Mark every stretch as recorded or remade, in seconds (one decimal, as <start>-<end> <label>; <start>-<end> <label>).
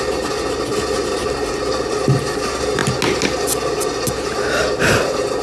0.0-5.4 recorded